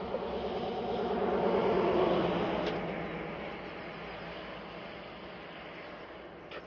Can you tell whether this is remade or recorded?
recorded